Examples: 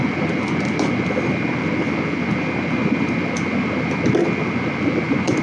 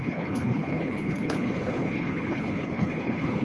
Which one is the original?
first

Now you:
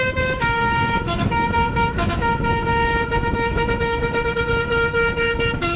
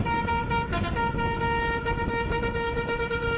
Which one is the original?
second